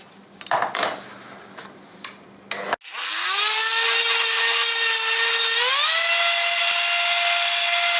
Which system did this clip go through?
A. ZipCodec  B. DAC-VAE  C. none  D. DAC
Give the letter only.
C